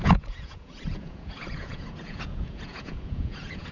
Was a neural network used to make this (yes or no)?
yes